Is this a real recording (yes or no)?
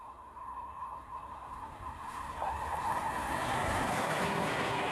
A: no